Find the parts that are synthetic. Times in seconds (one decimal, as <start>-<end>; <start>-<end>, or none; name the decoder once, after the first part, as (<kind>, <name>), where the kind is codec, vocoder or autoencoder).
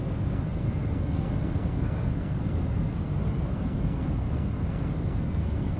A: 0.0-5.8 (codec, SNAC)